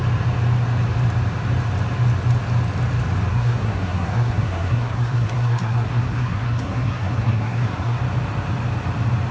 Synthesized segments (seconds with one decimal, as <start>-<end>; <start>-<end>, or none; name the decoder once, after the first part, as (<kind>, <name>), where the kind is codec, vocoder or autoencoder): 3.3-8.0 (codec, SNAC)